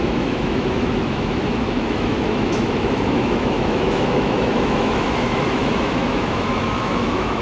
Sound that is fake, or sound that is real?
fake